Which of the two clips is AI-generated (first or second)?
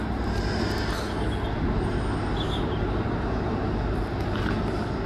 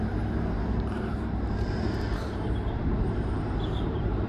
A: second